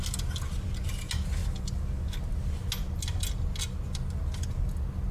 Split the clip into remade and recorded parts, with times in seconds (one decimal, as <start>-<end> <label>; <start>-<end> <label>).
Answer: 0.0-5.1 recorded